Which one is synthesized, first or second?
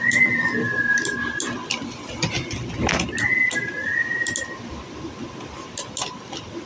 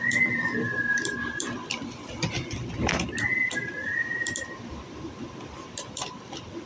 second